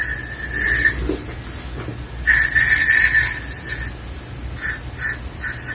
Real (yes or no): yes